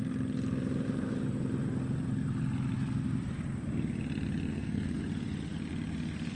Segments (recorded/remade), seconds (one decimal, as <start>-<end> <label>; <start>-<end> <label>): 0.0-4.5 recorded; 4.5-5.0 remade; 5.0-6.3 recorded